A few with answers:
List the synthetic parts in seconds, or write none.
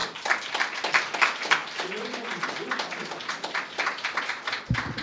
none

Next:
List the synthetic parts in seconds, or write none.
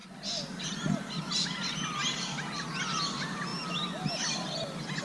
none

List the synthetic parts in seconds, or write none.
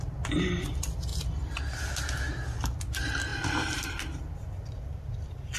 none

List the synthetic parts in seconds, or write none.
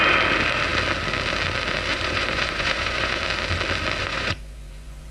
1.9-3.2 (vocoder, Vocos); 4.0-5.1